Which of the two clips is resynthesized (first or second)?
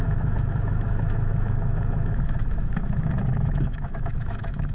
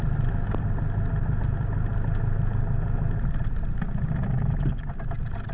first